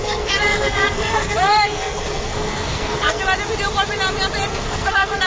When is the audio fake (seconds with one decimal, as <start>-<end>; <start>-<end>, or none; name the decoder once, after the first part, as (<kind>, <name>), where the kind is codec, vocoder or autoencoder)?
0.0-3.2 (codec, SNAC); 4.5-5.3